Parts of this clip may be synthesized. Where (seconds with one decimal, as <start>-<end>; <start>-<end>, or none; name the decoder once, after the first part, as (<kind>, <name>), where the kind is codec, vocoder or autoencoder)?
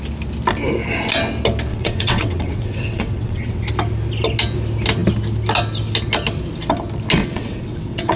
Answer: 1.7-3.6 (vocoder, WaveNeXt); 7.2-8.2